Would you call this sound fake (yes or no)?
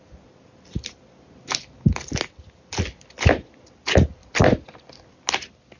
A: no